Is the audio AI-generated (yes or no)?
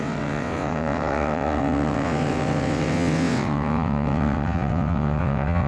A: yes